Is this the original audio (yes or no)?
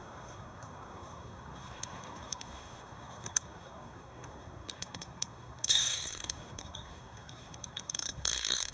no